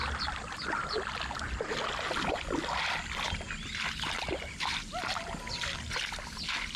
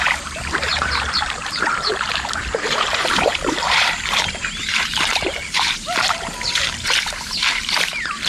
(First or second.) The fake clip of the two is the second